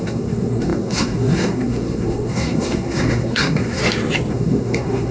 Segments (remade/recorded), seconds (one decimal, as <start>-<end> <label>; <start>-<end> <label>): 0.0-3.8 remade; 3.8-4.3 recorded; 4.3-5.1 remade